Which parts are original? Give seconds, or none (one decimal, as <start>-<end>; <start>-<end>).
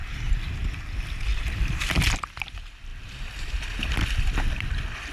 0.6-1.3; 1.9-5.1